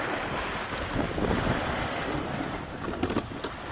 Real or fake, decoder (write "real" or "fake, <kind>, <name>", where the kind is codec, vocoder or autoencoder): real